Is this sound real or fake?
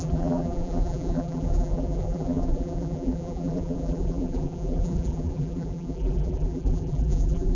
fake